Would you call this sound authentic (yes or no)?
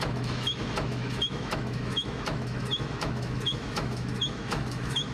no